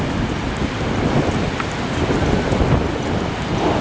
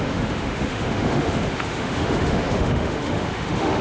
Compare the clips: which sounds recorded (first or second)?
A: first